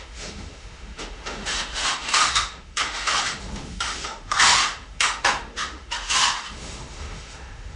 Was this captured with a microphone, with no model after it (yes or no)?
no